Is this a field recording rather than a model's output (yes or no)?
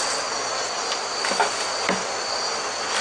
yes